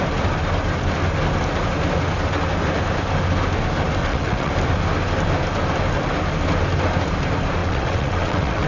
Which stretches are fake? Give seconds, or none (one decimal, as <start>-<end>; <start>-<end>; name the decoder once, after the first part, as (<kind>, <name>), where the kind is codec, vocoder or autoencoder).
4.0-4.5 (vocoder, WaveNeXt); 7.6-8.7